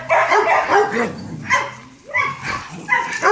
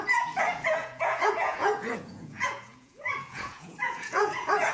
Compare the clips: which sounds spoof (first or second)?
second